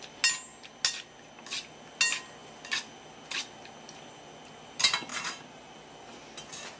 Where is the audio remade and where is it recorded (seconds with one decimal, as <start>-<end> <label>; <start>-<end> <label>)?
0.0-5.1 recorded; 5.1-5.7 remade; 5.7-6.8 recorded